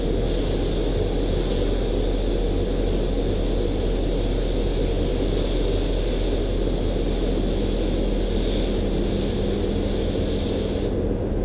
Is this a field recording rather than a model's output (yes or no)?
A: yes